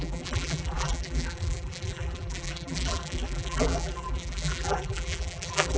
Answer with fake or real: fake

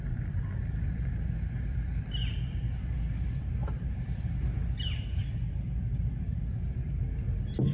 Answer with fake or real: fake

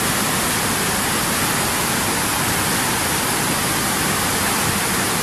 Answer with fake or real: real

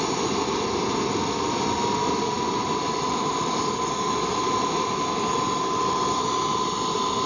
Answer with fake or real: real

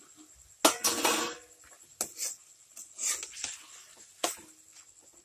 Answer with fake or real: real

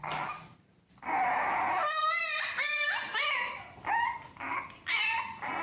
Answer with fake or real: real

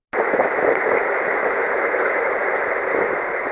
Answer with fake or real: real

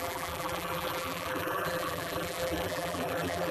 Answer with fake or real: fake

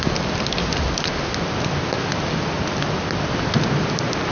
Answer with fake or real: real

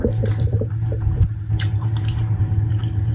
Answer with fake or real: fake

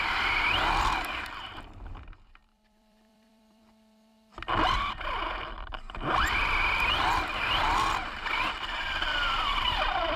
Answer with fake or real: fake